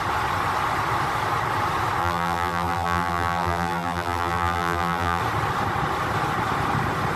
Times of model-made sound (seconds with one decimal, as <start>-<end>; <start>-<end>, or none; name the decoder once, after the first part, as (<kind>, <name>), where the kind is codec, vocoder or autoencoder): 2.0-5.2 (vocoder, BigVGAN v2)